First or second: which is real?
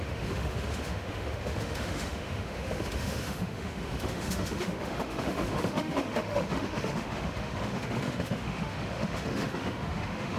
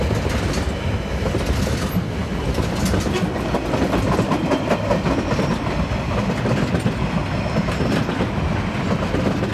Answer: second